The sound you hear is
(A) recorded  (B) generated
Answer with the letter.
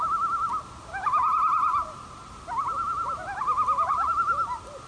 A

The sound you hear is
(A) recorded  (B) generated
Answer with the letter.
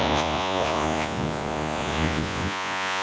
B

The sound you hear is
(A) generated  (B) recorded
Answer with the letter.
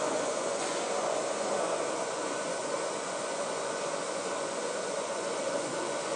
A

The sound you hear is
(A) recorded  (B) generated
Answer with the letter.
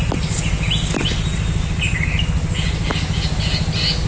A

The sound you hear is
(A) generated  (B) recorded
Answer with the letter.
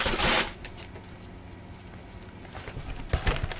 B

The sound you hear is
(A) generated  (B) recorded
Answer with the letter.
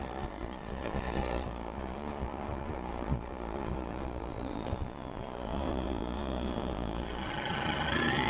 A